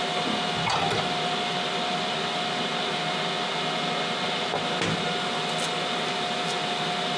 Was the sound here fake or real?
real